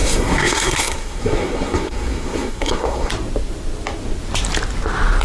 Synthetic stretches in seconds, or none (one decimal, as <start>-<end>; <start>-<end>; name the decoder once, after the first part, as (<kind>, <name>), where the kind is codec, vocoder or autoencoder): 0.0-3.1 (codec, SNAC)